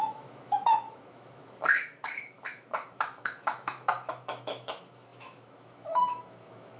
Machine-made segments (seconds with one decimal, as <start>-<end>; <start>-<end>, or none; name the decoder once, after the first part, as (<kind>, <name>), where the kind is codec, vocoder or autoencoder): 0.0-6.8 (autoencoder, DAC-VAE)